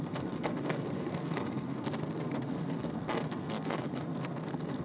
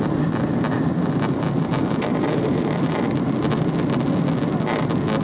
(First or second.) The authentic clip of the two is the second